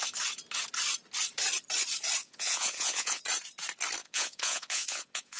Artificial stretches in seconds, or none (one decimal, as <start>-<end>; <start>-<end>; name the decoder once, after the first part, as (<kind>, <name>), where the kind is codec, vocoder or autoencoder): 2.2-3.2 (vocoder, Vocos); 4.0-5.4